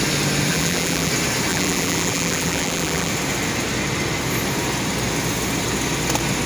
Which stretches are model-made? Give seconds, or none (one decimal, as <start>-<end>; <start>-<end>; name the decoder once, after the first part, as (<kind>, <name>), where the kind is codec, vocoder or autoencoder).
0.5-1.1 (vocoder, BigVGAN v2); 1.5-3.1